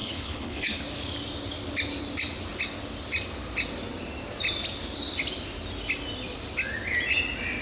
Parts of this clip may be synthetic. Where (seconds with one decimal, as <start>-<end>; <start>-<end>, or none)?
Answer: 0.0-0.8